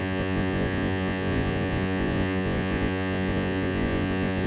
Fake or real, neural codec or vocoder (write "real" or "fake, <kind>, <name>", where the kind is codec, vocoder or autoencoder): fake, vocoder, Vocos